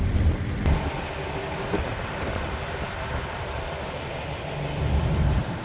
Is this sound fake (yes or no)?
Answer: no